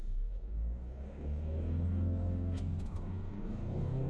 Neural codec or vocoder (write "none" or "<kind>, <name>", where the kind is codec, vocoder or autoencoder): codec, DAC